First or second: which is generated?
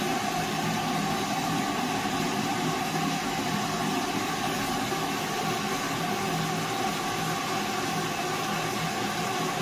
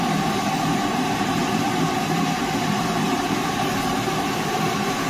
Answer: second